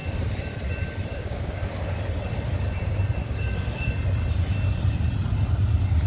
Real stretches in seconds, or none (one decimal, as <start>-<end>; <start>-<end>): 0.0-1.1; 1.7-3.2; 3.9-6.1